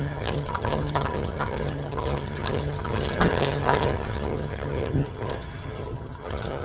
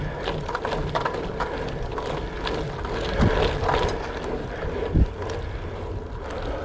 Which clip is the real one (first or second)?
second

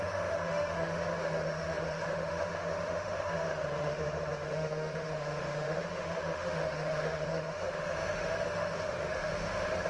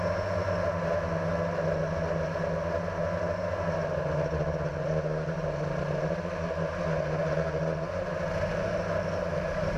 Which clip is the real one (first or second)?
second